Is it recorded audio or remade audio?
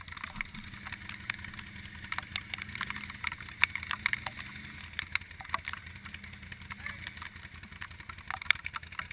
recorded